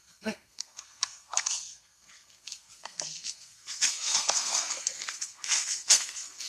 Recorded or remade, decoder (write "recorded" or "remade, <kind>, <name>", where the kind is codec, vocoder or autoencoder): remade, codec, SNAC